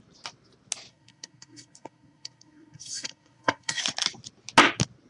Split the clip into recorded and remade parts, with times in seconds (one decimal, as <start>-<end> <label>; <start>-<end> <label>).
0.0-0.9 recorded; 0.9-3.8 remade; 3.8-5.1 recorded